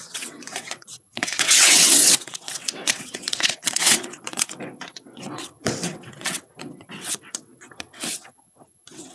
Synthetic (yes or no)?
yes